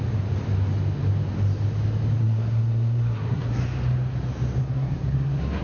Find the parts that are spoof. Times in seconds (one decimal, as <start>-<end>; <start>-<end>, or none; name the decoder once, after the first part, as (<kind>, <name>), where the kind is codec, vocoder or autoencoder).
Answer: 2.2-3.6 (codec, SNAC); 4.6-5.6

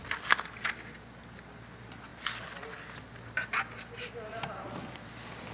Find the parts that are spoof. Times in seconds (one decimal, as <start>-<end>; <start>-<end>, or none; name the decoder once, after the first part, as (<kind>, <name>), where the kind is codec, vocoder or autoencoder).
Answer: none

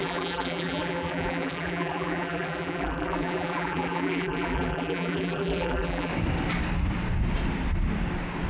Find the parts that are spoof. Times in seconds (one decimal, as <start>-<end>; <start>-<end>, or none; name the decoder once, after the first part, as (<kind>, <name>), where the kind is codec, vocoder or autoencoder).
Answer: 0.0-6.1 (vocoder, BigVGAN v2)